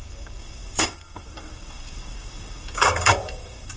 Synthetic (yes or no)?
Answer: yes